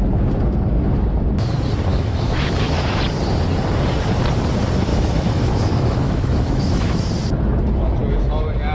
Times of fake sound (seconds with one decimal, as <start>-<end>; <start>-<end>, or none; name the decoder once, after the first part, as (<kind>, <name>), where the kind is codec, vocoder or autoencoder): 1.9-3.0 (autoencoder, DAC-VAE); 4.9-7.1